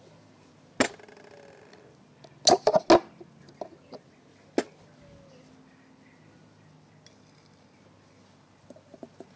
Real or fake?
real